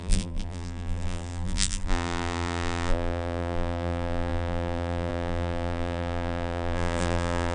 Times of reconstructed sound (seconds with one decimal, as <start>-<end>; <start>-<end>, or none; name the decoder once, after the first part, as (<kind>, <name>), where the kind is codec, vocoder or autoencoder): 0.0-7.5 (vocoder, BigVGAN v2)